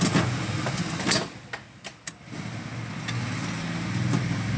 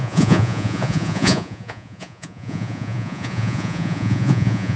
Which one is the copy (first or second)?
second